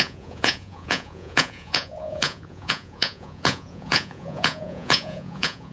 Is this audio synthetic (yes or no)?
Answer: yes